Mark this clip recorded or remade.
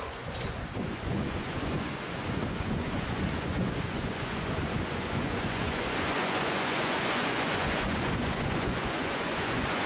remade